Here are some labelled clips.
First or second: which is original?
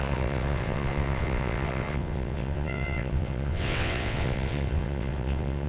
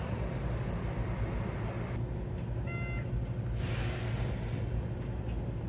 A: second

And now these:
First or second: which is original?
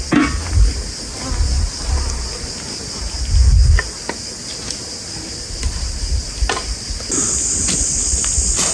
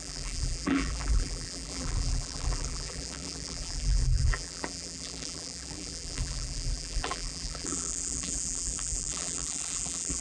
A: first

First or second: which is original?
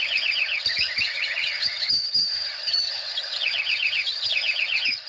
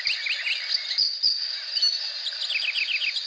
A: second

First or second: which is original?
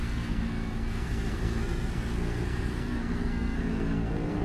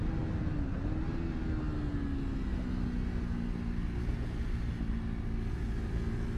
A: second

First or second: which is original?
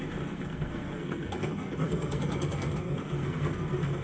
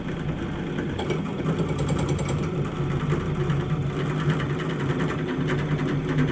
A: second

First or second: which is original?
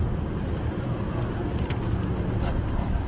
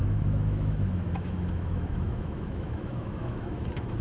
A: first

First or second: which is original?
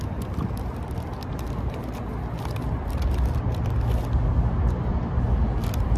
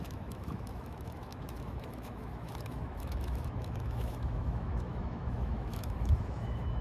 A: first